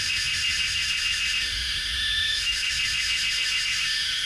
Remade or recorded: remade